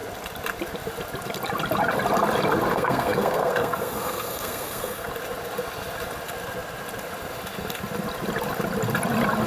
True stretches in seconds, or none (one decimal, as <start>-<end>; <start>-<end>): 0.0-2.7; 5.1-9.5